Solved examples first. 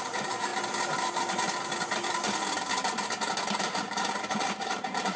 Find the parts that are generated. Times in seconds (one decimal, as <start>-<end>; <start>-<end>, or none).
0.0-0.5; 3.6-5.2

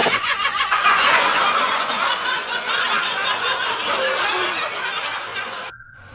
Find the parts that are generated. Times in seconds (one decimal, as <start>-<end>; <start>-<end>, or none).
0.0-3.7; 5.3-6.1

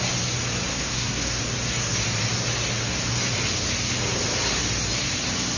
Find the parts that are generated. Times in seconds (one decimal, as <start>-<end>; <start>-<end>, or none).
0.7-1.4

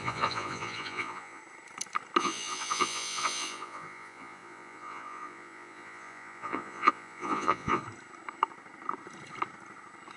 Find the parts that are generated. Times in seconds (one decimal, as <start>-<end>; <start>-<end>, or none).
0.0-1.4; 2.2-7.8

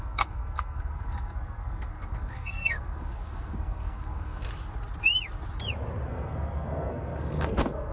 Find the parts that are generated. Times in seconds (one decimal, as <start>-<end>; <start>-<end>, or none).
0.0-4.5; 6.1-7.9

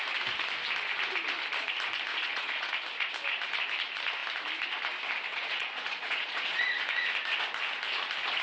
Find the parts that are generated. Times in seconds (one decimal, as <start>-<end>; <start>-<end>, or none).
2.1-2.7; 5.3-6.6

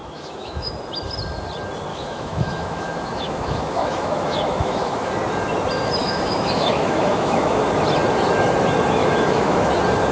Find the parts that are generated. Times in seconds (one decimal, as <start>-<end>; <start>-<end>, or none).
0.0-0.7; 1.9-5.1; 6.0-7.6; 9.0-9.7

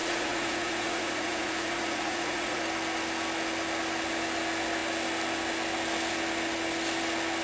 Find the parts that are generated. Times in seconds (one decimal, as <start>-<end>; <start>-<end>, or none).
0.0-2.6